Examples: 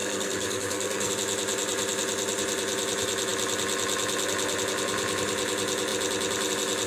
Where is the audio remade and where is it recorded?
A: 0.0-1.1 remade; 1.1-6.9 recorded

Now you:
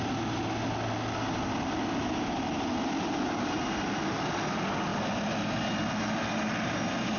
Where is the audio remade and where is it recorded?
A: 0.0-7.2 recorded

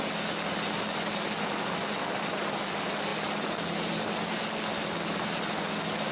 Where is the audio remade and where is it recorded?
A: 0.0-6.1 recorded

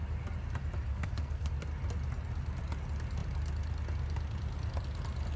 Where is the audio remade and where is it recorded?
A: 0.0-0.9 recorded; 0.9-1.5 remade; 1.5-5.4 recorded

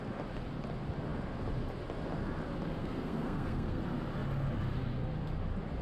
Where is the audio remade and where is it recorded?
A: 0.0-2.8 recorded; 2.8-3.8 remade; 3.8-5.8 recorded

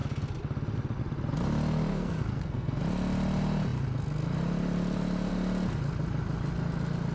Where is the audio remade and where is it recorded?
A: 0.0-1.9 recorded; 1.9-2.8 remade; 2.8-7.1 recorded

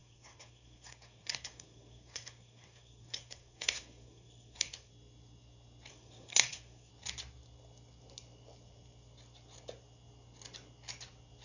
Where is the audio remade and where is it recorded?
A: 0.0-4.9 remade; 4.9-5.9 recorded; 5.9-6.9 remade; 6.9-11.4 recorded

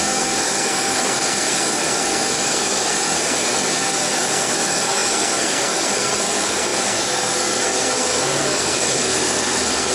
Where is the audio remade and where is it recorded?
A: 0.0-9.9 remade